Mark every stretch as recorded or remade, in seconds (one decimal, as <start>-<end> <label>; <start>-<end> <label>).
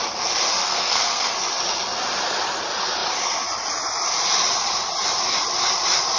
0.0-0.6 recorded; 0.6-1.3 remade; 1.3-6.2 recorded